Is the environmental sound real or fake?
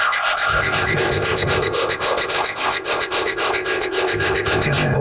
fake